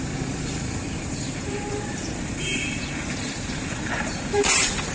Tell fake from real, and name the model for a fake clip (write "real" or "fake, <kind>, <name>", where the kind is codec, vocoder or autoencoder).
fake, vocoder, BigVGAN v2